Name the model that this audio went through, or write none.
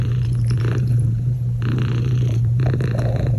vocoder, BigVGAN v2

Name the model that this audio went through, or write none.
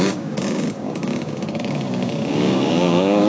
codec, DAC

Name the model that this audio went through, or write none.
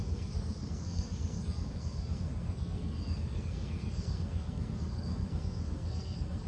codec, SNAC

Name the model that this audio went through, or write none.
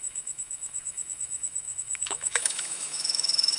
autoencoder, DAC-VAE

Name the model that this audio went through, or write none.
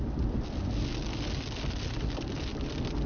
none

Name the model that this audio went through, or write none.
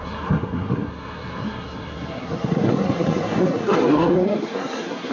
codec, SNAC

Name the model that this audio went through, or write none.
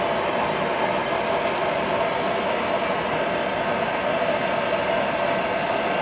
none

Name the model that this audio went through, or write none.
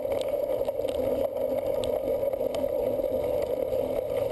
none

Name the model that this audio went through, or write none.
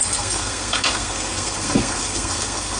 codec, SNAC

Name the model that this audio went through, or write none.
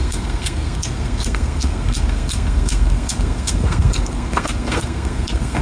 codec, SNAC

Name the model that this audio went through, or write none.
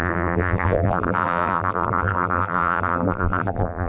vocoder, BigVGAN v2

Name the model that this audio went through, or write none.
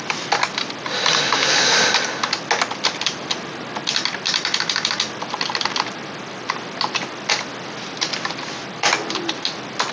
none